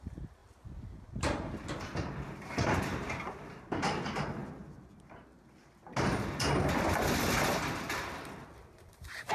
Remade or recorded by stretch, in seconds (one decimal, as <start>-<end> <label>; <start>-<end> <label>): 0.0-0.4 remade; 0.4-1.0 recorded; 1.0-4.4 remade; 4.4-8.6 recorded; 8.6-9.3 remade